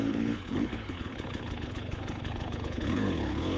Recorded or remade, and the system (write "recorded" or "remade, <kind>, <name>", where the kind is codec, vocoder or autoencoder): remade, codec, HILCodec